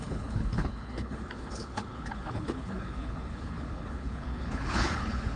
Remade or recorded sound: remade